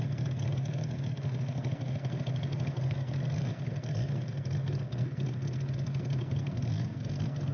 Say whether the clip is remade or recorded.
remade